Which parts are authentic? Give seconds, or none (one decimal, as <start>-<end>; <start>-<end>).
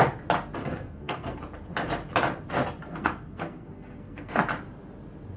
0.0-0.6; 1.4-2.8; 4.4-5.4